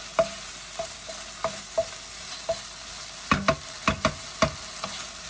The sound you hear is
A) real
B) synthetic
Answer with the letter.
A